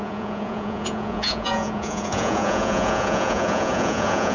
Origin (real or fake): fake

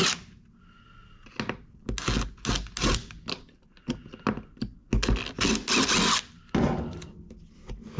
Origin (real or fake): real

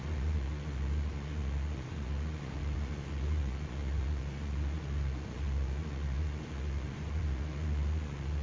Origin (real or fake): fake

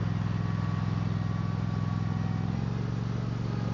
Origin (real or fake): real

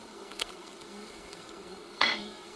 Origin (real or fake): fake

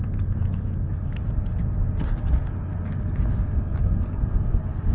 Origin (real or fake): real